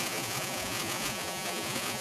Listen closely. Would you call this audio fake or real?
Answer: fake